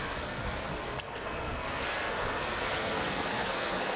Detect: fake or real fake